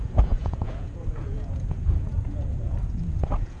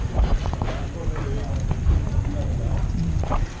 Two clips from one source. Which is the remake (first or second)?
first